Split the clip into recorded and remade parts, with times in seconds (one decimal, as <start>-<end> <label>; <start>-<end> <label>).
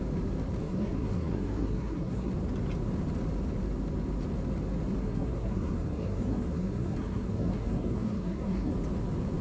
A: 0.0-0.6 recorded; 0.6-2.3 remade; 2.3-5.0 recorded; 5.0-8.7 remade; 8.7-9.4 recorded